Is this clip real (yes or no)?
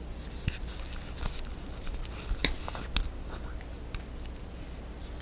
yes